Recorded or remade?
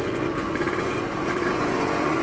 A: remade